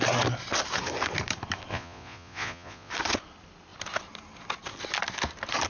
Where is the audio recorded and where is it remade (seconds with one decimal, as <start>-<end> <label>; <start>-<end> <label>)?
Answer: 0.0-1.7 recorded; 1.7-2.9 remade; 2.9-5.7 recorded

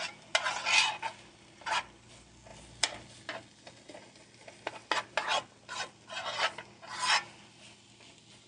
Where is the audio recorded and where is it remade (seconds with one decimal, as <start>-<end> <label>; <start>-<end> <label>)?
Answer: 0.0-8.5 recorded

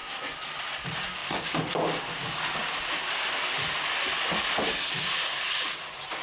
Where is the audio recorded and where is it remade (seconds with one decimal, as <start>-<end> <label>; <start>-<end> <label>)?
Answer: 0.0-0.6 remade; 0.6-1.2 recorded; 1.2-2.0 remade; 2.0-6.2 recorded

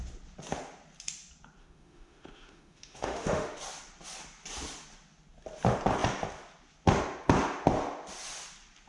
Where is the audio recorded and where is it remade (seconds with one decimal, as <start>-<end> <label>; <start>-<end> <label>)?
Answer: 0.0-1.6 recorded; 1.6-3.6 remade; 3.6-8.9 recorded

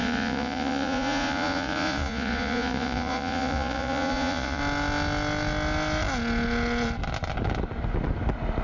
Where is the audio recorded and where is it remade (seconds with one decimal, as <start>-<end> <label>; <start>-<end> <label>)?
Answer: 0.0-4.6 remade; 4.6-8.6 recorded

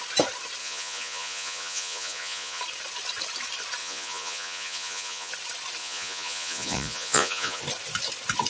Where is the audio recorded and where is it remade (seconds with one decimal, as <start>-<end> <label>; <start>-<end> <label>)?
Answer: 0.0-0.6 recorded; 0.6-2.6 remade; 2.6-3.8 recorded; 3.8-5.3 remade; 5.3-5.8 recorded; 5.8-7.6 remade; 7.6-8.5 recorded